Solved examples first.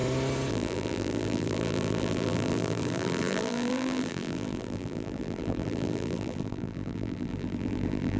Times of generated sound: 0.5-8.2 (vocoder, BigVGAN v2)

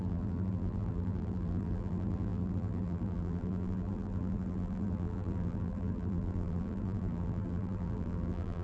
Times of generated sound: 0.0-8.6 (vocoder, BigVGAN v2)

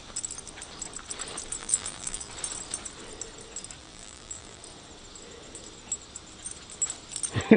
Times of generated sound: 1.6-2.3 (vocoder, BigVGAN v2); 3.8-4.6

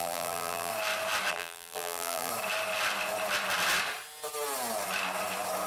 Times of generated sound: 0.0-0.7 (vocoder, BigVGAN v2); 1.3-2.3

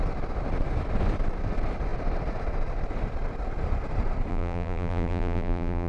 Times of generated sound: 4.3-5.9 (vocoder, BigVGAN v2)

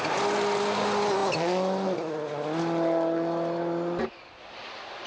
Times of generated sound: none

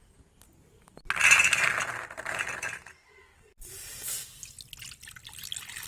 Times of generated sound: 1.8-3.2 (vocoder, BigVGAN v2)

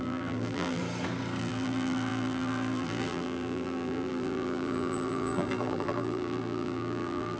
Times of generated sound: 0.0-0.8 (vocoder, BigVGAN v2); 1.4-7.4